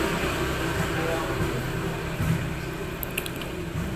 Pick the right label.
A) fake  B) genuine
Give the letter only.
B